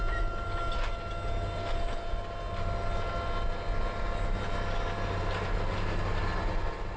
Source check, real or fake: real